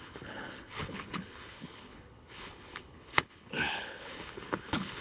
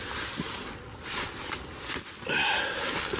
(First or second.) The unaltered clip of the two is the second